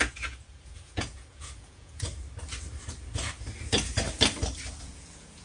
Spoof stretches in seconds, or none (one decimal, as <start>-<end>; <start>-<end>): 0.0-2.1; 4.8-5.4